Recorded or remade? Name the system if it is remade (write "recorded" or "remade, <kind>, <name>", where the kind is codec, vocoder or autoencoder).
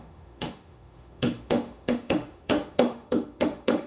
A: remade, autoencoder, DAC-VAE